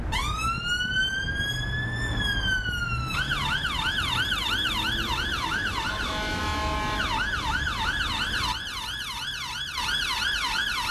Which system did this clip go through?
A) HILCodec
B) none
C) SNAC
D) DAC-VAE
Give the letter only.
B